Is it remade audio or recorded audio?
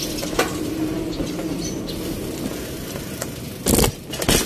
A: recorded